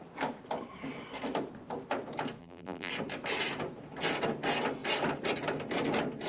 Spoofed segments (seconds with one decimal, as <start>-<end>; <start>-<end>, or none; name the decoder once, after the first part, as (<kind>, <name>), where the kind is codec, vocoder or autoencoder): 2.4-2.9 (vocoder, BigVGAN v2)

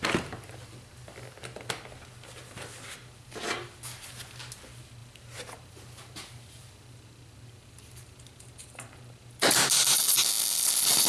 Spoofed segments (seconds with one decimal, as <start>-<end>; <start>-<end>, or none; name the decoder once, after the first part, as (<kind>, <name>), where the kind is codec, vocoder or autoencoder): 5.0-10.0 (vocoder, BigVGAN v2)

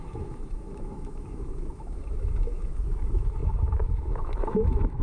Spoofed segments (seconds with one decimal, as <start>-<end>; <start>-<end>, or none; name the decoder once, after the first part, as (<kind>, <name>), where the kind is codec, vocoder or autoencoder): 0.0-5.0 (autoencoder, DAC-VAE)

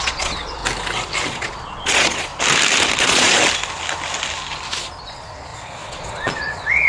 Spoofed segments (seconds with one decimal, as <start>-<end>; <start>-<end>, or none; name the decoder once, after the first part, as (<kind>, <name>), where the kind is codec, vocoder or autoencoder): 0.0-0.6 (vocoder, Vocos); 1.3-2.3; 3.0-3.4; 5.0-6.9

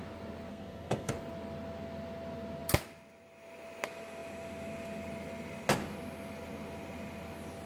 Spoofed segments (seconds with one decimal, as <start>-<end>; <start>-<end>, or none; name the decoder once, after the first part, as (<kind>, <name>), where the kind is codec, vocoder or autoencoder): 0.5-1.1 (codec, SNAC)

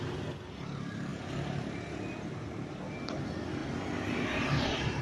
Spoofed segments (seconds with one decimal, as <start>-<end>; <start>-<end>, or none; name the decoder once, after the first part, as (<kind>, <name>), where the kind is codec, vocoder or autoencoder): 1.1-2.3 (vocoder, BigVGAN v2)

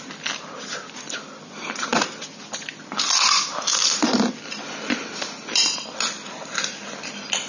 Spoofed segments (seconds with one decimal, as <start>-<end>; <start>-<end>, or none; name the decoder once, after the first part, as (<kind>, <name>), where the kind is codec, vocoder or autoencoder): none

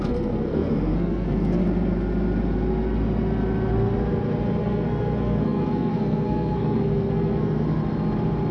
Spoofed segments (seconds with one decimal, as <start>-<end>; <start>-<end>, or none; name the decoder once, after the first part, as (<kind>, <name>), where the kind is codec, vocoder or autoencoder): 0.0-1.6 (codec, SNAC); 4.6-7.8